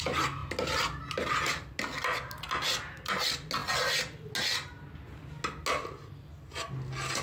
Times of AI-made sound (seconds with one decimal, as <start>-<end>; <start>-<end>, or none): none